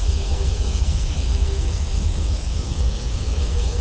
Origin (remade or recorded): remade